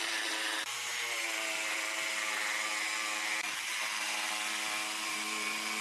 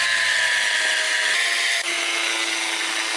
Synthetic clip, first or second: first